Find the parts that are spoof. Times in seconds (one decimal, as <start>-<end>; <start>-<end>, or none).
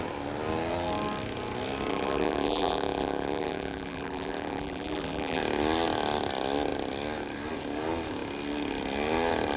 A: 1.9-5.4